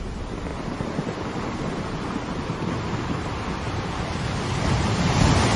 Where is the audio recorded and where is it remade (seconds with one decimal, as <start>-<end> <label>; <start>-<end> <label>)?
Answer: 0.0-5.6 recorded